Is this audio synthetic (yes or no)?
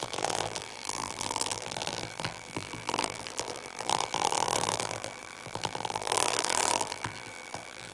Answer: yes